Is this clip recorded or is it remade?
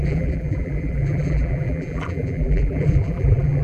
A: remade